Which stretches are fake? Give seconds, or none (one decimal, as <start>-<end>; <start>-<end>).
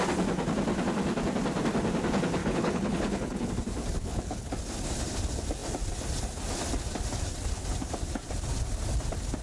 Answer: 2.4-3.5; 4.0-4.5